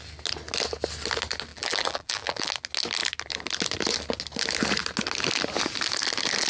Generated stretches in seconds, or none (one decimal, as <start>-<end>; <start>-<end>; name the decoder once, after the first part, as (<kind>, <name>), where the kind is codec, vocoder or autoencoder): 1.5-2.5 (vocoder, BigVGAN v2)